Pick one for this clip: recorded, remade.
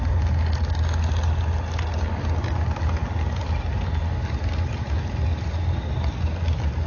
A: recorded